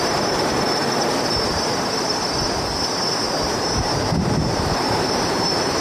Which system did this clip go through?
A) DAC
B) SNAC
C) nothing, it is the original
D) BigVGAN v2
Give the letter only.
D